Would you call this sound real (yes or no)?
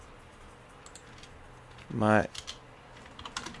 yes